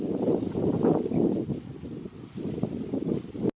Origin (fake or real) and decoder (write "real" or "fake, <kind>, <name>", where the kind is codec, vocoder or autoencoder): real